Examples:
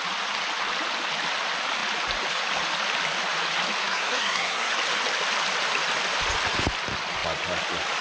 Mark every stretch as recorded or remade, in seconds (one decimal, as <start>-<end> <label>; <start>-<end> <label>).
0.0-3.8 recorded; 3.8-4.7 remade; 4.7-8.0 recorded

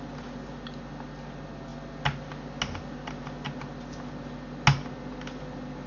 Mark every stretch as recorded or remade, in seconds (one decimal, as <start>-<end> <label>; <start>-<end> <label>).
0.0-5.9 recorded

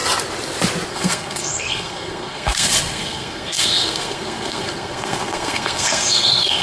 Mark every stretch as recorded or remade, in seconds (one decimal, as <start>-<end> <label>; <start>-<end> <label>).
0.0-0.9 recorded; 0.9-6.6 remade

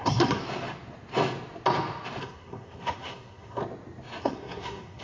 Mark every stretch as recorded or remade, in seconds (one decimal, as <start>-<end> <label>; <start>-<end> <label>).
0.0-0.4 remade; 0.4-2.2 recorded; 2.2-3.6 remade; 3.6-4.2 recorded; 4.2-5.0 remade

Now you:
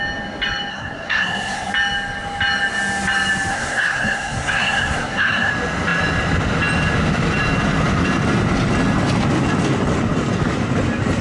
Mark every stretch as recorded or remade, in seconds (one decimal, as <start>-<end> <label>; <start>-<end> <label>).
0.0-0.7 recorded; 0.7-1.7 remade; 1.7-3.5 recorded; 3.5-5.5 remade; 5.5-11.2 recorded